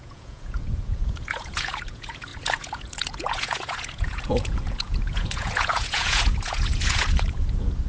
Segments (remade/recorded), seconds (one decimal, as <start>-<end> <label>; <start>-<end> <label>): 0.0-7.9 remade